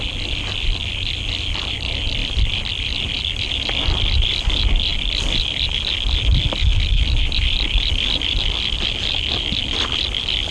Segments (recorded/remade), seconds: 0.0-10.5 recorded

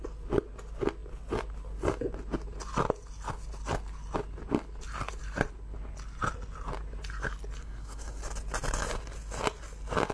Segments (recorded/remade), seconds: 0.0-7.6 recorded; 7.6-8.2 remade; 8.2-10.1 recorded

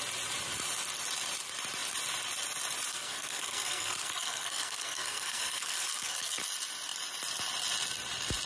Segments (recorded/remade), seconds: 0.0-2.9 recorded; 2.9-6.4 remade; 6.4-8.5 recorded

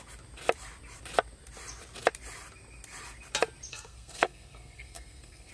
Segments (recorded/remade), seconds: 0.0-3.7 recorded; 3.7-5.5 remade

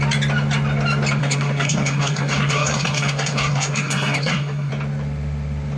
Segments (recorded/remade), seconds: 0.0-1.2 recorded; 1.2-4.7 remade; 4.7-5.8 recorded

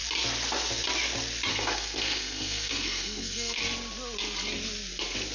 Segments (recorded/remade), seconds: 0.0-1.5 recorded; 1.5-3.6 remade; 3.6-5.3 recorded